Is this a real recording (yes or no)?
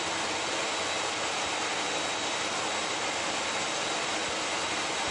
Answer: yes